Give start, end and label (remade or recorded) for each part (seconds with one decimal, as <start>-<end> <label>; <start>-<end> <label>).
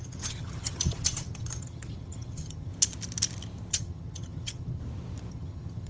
0.0-2.7 remade; 2.7-3.7 recorded; 3.7-4.8 remade; 4.8-5.3 recorded; 5.3-5.9 remade